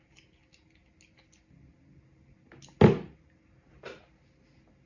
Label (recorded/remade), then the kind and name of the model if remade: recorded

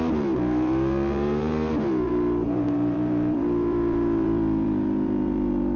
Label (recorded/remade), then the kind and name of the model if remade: remade, vocoder, BigVGAN v2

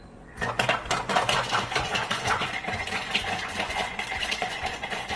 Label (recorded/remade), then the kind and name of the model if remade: remade, vocoder, Vocos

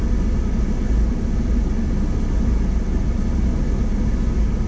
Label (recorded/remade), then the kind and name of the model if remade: recorded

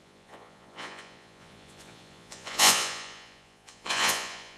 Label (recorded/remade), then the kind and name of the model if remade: remade, vocoder, Vocos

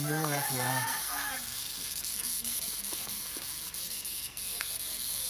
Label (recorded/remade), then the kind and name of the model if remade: remade, codec, SNAC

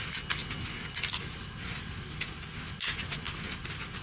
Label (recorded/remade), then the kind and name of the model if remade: recorded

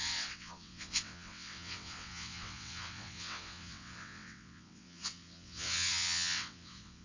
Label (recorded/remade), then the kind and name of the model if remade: remade, vocoder, WaveNeXt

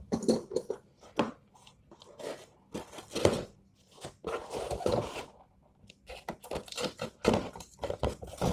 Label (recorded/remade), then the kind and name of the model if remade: recorded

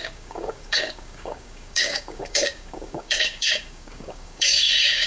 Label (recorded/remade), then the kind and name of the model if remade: remade, codec, DAC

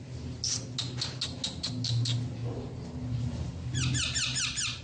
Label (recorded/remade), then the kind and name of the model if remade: recorded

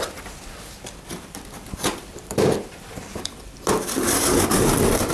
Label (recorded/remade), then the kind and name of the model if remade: remade, vocoder, BigVGAN v2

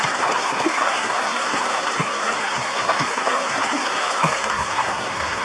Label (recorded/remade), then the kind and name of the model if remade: remade, codec, SNAC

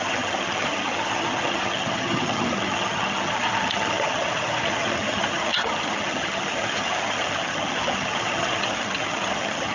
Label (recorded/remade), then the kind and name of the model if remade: remade, vocoder, HiFi-GAN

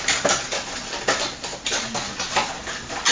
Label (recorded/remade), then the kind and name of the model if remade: recorded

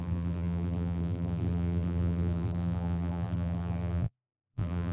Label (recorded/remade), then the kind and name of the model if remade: remade, vocoder, BigVGAN v2